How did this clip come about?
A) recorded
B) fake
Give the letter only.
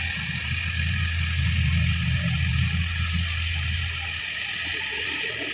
A